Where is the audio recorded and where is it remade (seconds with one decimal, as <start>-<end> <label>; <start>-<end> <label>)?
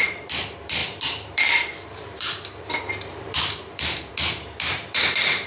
0.0-5.5 remade